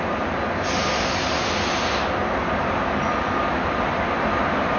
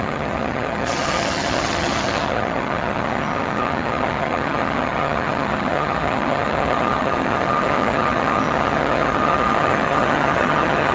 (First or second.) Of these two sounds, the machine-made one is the second